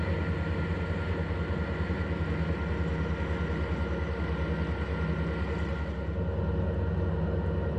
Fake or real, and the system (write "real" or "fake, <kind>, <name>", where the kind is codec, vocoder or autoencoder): real